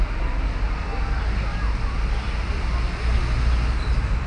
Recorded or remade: recorded